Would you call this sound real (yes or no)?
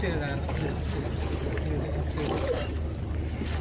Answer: yes